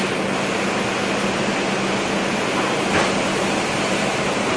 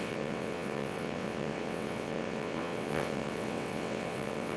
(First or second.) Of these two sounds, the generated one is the second